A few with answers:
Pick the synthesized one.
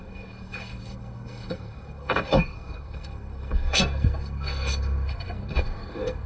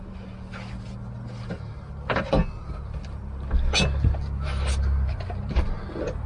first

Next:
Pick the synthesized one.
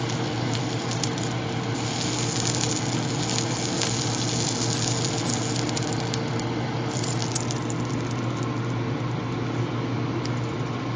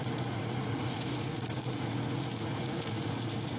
second